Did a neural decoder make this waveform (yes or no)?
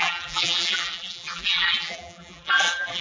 yes